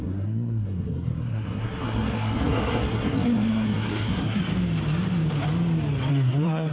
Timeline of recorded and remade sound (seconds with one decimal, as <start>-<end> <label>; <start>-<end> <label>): 0.0-4.4 remade; 4.4-6.1 recorded; 6.1-6.7 remade